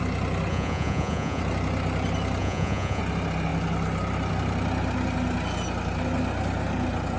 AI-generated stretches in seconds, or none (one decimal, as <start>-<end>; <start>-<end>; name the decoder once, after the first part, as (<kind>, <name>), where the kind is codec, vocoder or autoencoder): 0.5-1.4 (vocoder, Vocos); 2.4-3.0